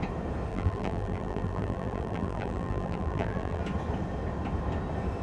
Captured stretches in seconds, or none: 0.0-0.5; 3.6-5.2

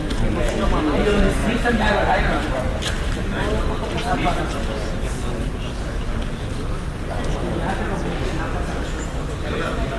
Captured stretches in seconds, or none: 0.0-1.4; 4.4-10.0